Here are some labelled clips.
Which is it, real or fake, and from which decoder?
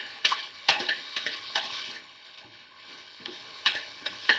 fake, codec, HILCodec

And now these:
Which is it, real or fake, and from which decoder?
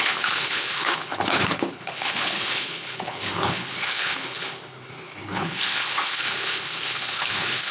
fake, codec, HILCodec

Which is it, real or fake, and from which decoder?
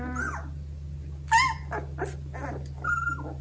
real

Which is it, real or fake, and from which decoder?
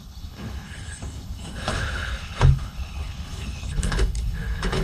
fake, codec, HILCodec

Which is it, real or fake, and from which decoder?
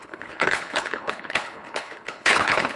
fake, codec, HILCodec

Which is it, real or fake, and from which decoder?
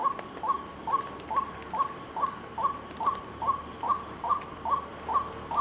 real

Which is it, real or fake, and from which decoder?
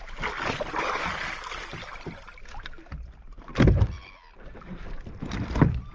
real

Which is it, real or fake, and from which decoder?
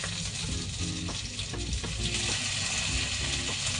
real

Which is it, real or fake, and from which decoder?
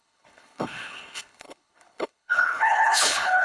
fake, codec, HILCodec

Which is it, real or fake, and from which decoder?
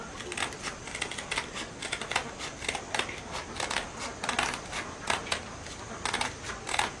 real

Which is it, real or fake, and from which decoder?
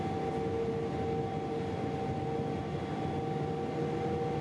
real